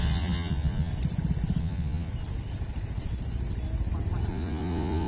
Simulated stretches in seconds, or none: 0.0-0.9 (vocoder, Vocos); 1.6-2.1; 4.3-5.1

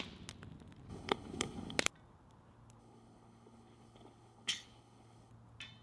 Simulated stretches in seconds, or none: 0.9-1.8 (codec, HILCodec); 2.8-5.3

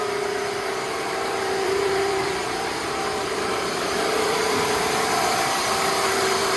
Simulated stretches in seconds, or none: 0.0-6.6 (vocoder, BigVGAN v2)

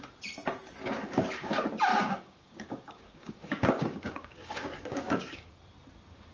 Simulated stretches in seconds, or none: 0.8-1.5 (codec, DAC); 1.9-5.6

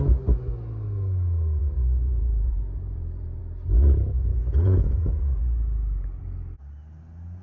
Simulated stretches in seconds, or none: 1.6-3.4 (vocoder, Vocos); 4.3-5.4

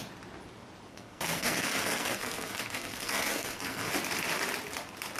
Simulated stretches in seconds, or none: 0.9-3.9 (codec, SNAC)